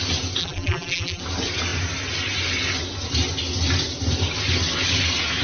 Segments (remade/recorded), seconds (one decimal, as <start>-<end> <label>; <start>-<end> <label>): 0.0-0.4 recorded; 0.4-1.2 remade; 1.2-5.4 recorded